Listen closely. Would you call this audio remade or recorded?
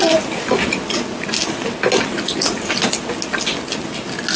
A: recorded